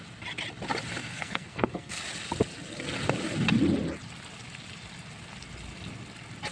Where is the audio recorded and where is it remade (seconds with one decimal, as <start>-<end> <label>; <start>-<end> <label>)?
0.0-1.0 recorded; 1.0-2.0 remade; 2.0-6.5 recorded